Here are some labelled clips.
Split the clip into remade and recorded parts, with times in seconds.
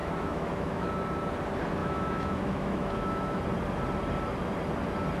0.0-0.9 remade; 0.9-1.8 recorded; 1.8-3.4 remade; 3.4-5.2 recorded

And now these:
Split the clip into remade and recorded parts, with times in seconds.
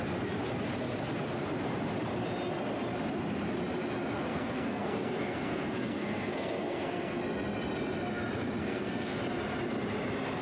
0.0-4.3 recorded; 4.3-7.2 remade; 7.2-8.6 recorded; 8.6-9.2 remade; 9.2-10.4 recorded